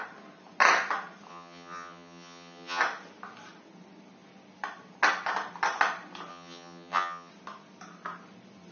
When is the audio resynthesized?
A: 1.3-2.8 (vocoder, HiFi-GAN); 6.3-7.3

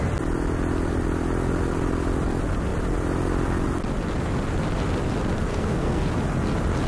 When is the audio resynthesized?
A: 5.5-6.1 (codec, SNAC)